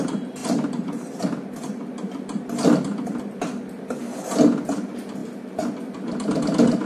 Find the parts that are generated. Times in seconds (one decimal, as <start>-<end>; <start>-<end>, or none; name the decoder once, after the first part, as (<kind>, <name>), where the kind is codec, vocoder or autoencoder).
0.4-1.2 (vocoder, BigVGAN v2)